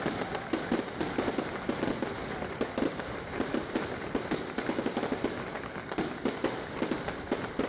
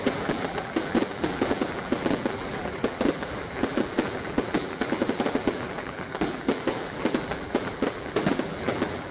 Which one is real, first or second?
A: first